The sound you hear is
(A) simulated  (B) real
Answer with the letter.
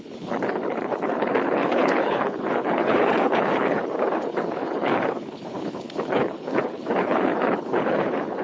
A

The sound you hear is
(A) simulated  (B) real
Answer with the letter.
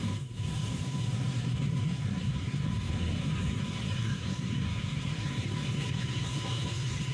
A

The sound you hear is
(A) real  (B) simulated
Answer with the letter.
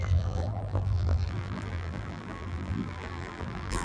B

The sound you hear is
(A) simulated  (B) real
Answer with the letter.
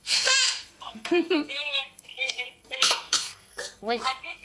A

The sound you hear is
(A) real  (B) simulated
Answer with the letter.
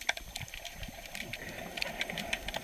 A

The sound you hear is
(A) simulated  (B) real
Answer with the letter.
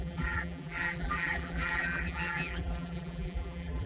A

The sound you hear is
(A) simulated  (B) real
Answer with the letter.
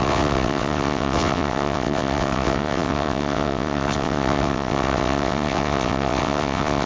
A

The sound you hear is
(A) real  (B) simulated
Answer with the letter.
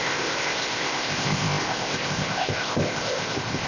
B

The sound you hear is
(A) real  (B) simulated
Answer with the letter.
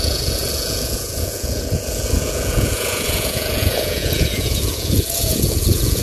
B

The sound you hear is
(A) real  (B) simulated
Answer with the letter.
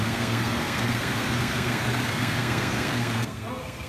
B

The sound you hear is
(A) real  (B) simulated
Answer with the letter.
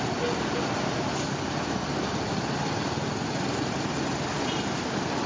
A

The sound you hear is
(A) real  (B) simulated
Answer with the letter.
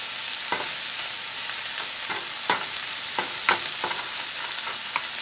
A